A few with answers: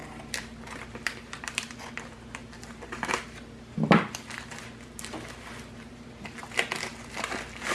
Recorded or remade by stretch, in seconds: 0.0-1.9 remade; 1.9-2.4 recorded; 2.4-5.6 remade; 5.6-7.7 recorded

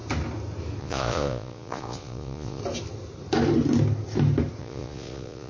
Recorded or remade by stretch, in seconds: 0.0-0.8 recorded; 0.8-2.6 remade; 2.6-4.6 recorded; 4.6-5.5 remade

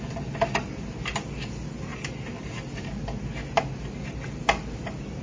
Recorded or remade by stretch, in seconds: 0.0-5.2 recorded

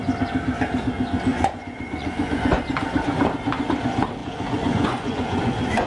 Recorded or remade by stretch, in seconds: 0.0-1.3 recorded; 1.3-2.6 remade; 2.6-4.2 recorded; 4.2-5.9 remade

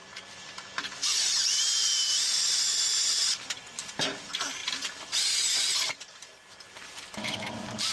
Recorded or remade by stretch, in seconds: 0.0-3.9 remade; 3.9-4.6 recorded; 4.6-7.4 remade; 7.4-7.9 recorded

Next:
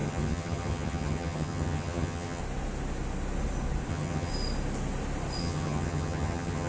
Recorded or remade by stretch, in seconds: 0.0-2.4 remade; 2.4-3.9 recorded; 3.9-4.3 remade; 4.3-5.4 recorded; 5.4-6.7 remade

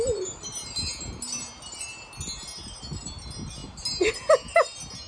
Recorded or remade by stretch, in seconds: 0.0-5.1 recorded